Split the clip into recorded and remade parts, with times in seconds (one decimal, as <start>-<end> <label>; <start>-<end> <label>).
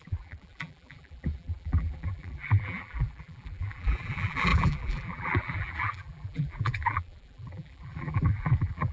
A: 0.0-8.9 remade